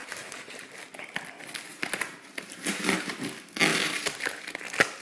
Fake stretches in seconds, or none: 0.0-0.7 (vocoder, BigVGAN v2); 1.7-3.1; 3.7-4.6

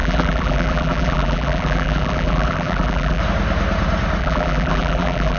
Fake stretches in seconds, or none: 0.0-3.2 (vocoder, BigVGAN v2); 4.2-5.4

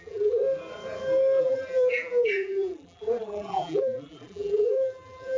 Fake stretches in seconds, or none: 0.0-0.4 (vocoder, BigVGAN v2); 1.4-5.4

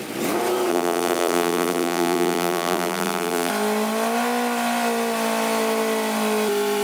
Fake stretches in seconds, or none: 0.7-3.5 (vocoder, BigVGAN v2)